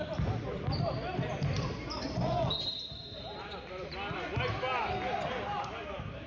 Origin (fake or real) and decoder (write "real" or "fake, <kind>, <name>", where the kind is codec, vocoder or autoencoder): real